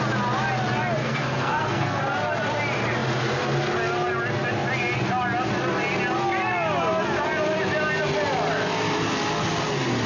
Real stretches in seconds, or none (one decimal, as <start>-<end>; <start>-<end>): 0.0-1.0; 2.0-10.1